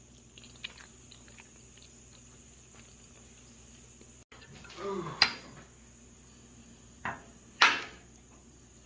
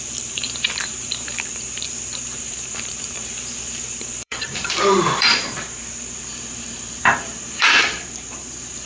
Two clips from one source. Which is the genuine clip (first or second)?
first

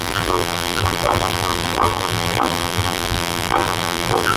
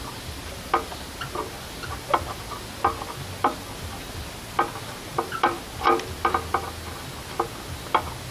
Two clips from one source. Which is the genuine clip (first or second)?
second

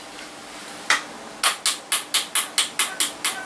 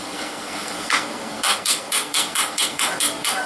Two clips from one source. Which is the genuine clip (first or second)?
first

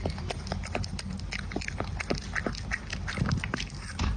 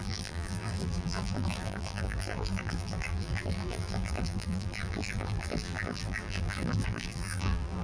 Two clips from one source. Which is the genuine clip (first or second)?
first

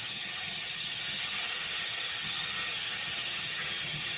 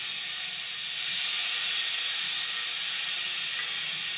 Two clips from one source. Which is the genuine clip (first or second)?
second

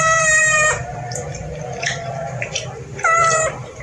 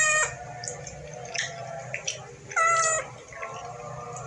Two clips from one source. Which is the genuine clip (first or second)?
second